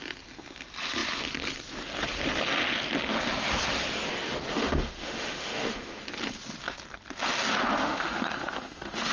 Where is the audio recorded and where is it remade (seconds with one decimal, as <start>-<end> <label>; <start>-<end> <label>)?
0.0-4.5 recorded; 4.5-6.0 remade; 6.0-7.8 recorded; 7.8-9.1 remade